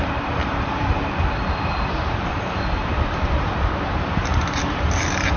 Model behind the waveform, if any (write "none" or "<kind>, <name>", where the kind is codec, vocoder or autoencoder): vocoder, BigVGAN v2